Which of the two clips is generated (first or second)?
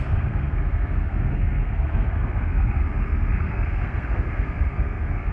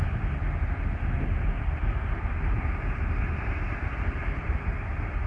first